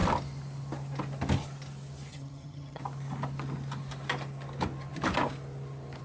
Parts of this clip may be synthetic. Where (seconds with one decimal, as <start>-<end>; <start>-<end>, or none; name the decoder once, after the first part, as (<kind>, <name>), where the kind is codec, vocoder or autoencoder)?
2.1-2.8 (vocoder, HiFi-GAN)

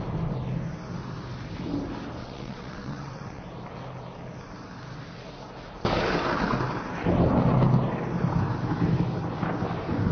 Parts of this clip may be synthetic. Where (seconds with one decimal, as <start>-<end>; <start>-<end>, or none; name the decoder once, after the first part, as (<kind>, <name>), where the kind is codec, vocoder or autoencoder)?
2.2-3.4 (vocoder, WaveNeXt)

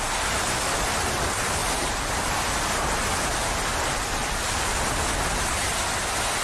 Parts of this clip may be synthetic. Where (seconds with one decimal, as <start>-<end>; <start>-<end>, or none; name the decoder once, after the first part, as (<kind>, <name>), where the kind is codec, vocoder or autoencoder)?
1.6-2.2 (vocoder, BigVGAN v2); 4.2-4.8

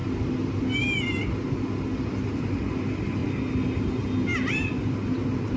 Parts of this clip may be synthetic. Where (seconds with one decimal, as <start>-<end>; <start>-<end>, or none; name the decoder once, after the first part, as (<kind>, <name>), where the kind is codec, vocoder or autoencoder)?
none

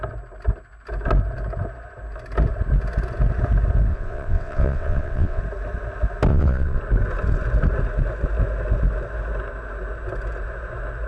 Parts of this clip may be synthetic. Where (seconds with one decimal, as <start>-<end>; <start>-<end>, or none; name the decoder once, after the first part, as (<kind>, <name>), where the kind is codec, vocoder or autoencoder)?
3.9-5.4 (vocoder, WaveNeXt); 6.3-6.8

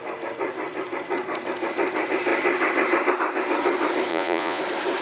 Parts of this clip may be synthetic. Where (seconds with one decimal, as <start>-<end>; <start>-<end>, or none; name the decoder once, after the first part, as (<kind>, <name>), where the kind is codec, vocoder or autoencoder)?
4.1-4.6 (vocoder, Vocos)

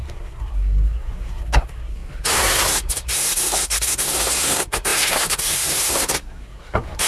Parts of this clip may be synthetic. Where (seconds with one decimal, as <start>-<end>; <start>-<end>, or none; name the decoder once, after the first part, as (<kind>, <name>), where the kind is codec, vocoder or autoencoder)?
0.0-7.1 (codec, SNAC)